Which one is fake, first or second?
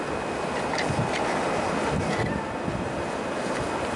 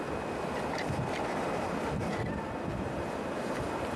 second